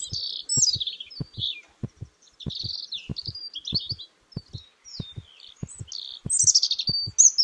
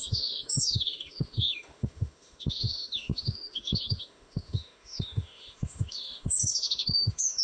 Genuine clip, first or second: first